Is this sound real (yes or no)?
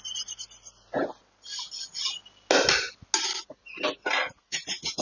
yes